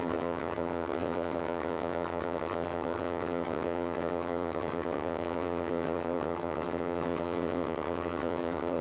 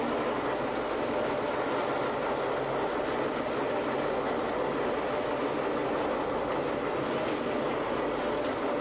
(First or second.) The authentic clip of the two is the second